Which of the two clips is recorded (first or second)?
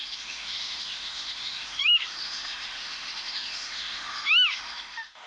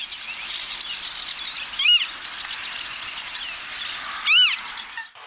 second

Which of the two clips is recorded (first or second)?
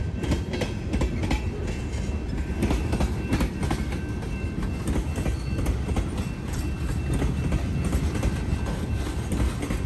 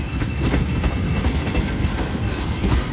first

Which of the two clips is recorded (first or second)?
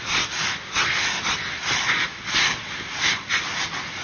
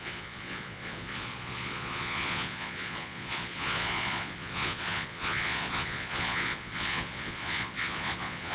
first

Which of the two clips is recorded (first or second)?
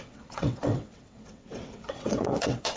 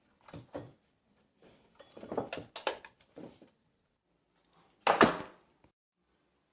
second